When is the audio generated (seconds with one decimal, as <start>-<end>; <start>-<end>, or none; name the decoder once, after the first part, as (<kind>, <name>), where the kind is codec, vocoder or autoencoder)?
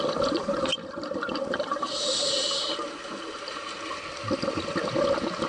0.7-4.0 (vocoder, BigVGAN v2)